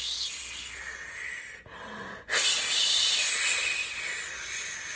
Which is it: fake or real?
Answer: real